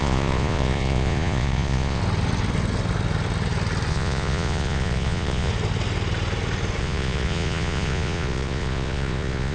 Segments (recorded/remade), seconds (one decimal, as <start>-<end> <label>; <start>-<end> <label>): 0.0-2.0 remade; 2.0-3.9 recorded; 3.9-5.5 remade; 5.5-6.8 recorded; 6.8-9.5 remade